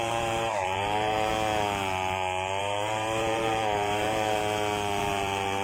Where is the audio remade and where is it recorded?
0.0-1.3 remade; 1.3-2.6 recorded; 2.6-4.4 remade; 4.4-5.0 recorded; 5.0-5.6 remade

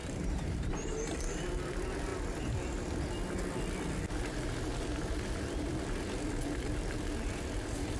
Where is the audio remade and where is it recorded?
0.0-0.7 remade; 0.7-8.0 recorded

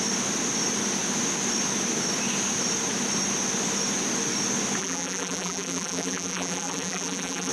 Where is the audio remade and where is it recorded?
0.0-4.8 recorded; 4.8-7.5 remade